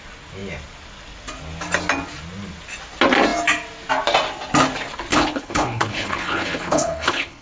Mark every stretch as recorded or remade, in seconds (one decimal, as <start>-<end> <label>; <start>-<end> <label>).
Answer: 0.0-5.1 recorded; 5.1-7.4 remade